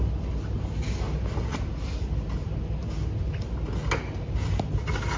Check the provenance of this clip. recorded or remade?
recorded